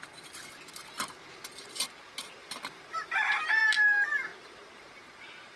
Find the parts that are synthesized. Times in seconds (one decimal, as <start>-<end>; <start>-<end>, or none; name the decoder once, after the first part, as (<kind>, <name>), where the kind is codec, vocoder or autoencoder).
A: 2.4-3.6 (vocoder, BigVGAN v2); 4.3-5.6